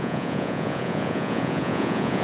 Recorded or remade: remade